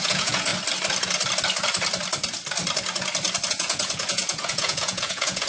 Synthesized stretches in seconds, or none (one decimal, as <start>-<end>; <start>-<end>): 0.0-0.5; 3.5-5.5

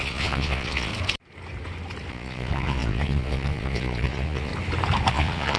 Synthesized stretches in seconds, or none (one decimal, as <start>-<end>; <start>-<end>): 0.0-0.9; 2.1-4.5; 5.1-5.6

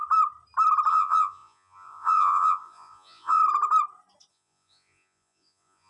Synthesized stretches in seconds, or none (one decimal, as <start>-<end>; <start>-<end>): 0.9-3.4; 4.3-5.9

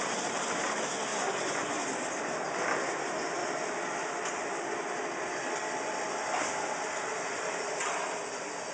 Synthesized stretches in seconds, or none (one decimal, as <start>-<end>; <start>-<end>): 1.1-1.8

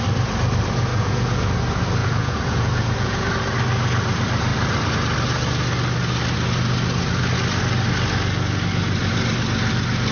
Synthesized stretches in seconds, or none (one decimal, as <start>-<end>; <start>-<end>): 0.9-1.5; 2.0-3.3

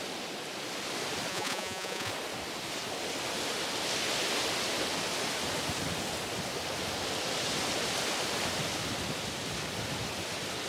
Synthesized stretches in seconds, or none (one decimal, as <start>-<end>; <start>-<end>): 1.3-2.1